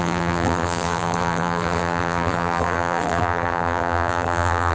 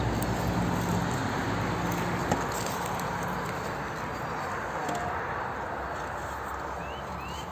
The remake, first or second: first